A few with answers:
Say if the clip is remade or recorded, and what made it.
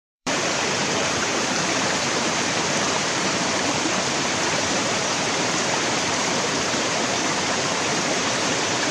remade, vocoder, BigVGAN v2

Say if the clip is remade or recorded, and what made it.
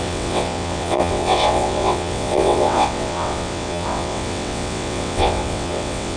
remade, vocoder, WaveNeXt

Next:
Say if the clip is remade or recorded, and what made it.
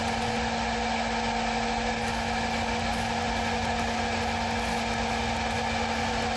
recorded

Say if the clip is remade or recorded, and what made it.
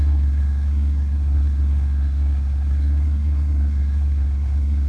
remade, codec, SNAC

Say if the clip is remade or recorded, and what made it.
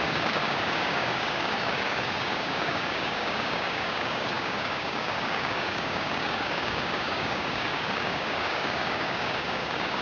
remade, codec, DAC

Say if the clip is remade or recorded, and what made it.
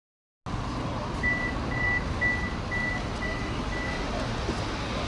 recorded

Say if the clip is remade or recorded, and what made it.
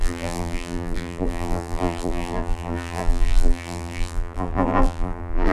remade, vocoder, BigVGAN v2